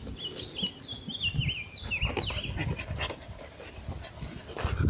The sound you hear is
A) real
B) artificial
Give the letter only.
A